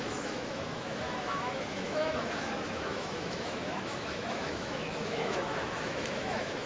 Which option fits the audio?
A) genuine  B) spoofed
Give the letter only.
B